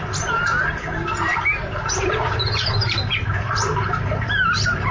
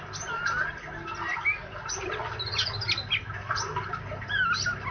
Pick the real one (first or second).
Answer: second